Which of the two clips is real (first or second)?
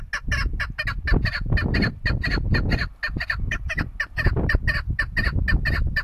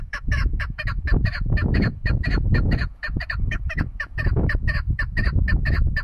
first